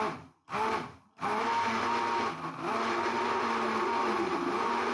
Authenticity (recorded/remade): recorded